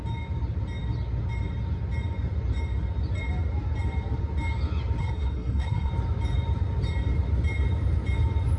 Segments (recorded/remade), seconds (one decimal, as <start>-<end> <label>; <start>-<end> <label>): 0.0-5.0 recorded; 5.0-5.9 remade; 5.9-8.6 recorded